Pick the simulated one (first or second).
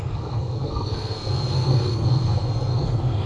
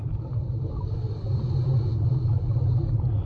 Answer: first